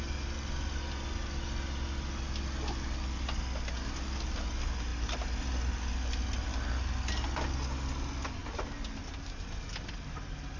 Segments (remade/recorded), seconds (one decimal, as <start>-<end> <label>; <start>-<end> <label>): 0.0-10.6 recorded